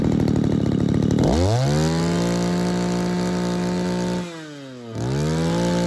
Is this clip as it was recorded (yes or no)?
yes